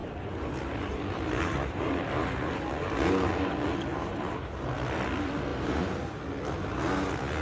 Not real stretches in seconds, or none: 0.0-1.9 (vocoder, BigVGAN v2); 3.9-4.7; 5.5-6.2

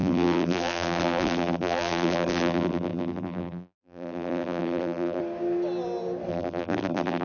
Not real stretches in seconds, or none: 0.0-5.2 (vocoder, BigVGAN v2); 6.3-7.2

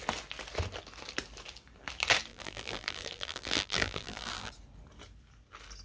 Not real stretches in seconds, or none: 2.3-4.5 (vocoder, BigVGAN v2)

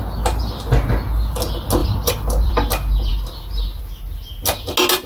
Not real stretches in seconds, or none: 1.8-2.5 (vocoder, BigVGAN v2)

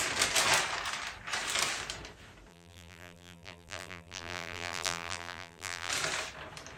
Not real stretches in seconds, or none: 2.5-5.9 (vocoder, BigVGAN v2)